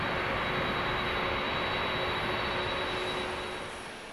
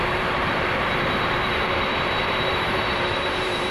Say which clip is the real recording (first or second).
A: first